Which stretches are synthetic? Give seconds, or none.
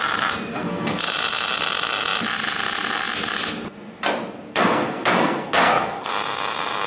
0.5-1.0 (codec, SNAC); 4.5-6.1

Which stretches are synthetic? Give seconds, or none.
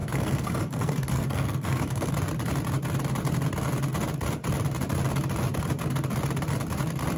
0.0-2.1 (codec, SNAC)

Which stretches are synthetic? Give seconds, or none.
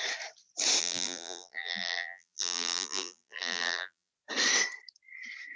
0.8-4.1 (vocoder, BigVGAN v2)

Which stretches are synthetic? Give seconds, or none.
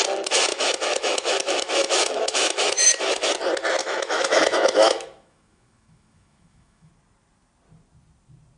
0.5-3.3 (autoencoder, DAC-VAE); 3.8-6.9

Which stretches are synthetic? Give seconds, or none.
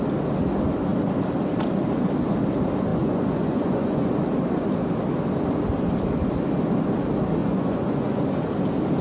2.9-4.1 (vocoder, Vocos); 7.4-8.2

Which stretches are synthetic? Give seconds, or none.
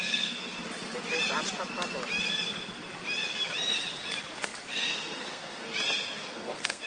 0.0-0.6 (codec, SNAC); 4.7-5.7; 6.2-6.9